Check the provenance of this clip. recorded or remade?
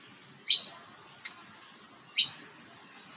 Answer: recorded